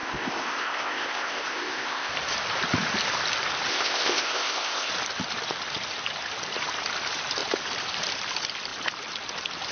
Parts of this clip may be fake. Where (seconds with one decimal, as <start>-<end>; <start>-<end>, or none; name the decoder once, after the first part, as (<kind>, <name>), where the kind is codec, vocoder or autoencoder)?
0.0-2.1 (codec, ZipCodec); 3.7-4.9